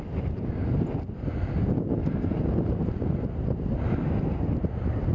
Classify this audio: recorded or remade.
recorded